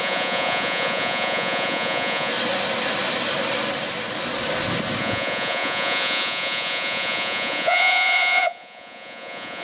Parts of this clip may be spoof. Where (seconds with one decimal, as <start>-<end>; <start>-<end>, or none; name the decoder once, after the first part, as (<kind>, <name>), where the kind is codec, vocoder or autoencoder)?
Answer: 0.0-2.3 (vocoder, Vocos); 5.0-9.6